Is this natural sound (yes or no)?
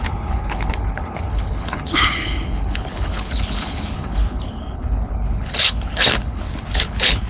no